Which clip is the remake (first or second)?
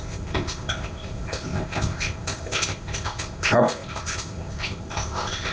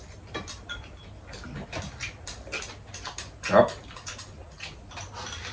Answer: first